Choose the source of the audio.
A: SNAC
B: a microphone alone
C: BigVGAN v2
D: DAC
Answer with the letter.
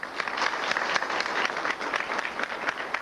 B